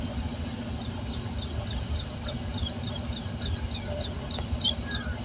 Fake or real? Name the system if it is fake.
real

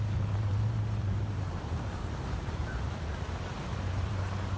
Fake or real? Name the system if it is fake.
fake, vocoder, BigVGAN v2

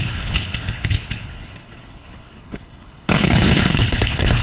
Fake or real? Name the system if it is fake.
fake, codec, HILCodec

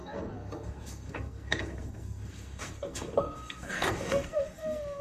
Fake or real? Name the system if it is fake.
fake, codec, SNAC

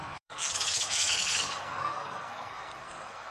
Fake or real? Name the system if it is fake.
fake, codec, SNAC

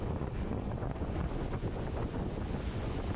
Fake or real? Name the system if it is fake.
fake, vocoder, Vocos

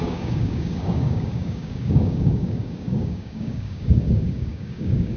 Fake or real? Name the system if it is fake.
fake, codec, DAC